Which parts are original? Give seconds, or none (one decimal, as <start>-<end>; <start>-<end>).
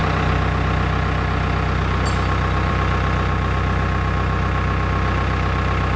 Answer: 0.0-6.0